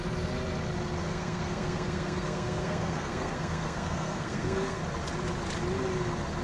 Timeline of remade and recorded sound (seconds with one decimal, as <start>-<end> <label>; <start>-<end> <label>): 0.0-1.0 recorded; 1.0-4.8 remade; 4.8-6.4 recorded